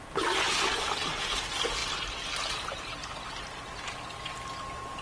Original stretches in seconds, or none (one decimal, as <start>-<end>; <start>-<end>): 0.0-5.0